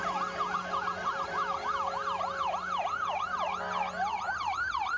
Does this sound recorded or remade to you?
recorded